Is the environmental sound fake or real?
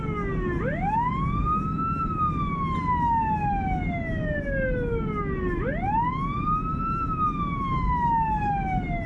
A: real